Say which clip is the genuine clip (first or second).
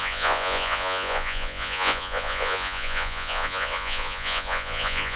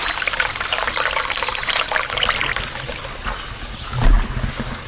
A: second